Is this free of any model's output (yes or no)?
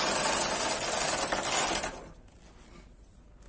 yes